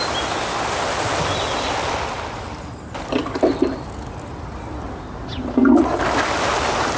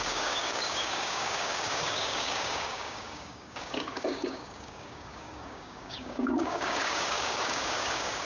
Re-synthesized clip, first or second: second